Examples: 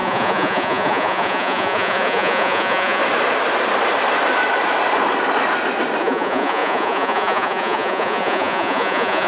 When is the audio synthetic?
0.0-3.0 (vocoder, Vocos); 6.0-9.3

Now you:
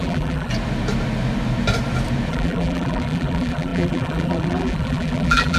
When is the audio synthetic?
0.0-0.5 (vocoder, BigVGAN v2); 2.3-5.6

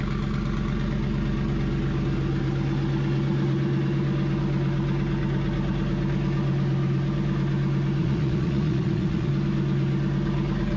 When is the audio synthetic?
8.0-9.3 (vocoder, Vocos)

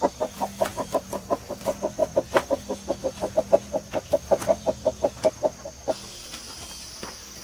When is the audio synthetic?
0.7-1.6 (vocoder, BigVGAN v2)

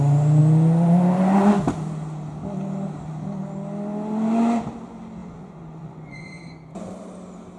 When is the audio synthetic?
5.2-6.4 (vocoder, Vocos)

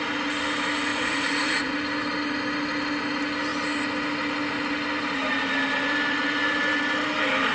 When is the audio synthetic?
0.9-1.7 (vocoder, Vocos)

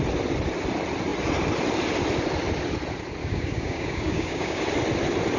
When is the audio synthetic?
3.2-4.6 (codec, DAC)